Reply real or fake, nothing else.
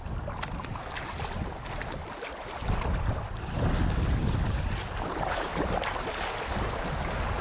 real